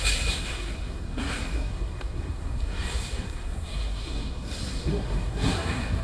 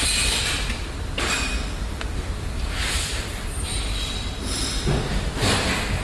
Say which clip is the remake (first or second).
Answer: first